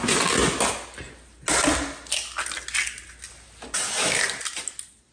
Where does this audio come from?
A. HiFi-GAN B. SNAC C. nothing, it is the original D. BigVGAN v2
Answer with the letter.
C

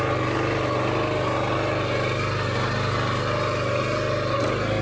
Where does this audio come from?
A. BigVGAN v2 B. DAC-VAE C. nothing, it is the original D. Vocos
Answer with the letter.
C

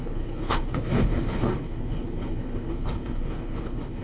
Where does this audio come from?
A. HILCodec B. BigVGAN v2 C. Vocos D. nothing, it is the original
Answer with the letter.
A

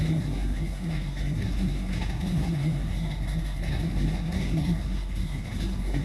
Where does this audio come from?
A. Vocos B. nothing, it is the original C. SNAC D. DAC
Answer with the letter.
C